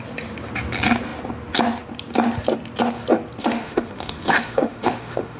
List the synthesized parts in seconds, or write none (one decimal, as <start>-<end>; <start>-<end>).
3.4-5.4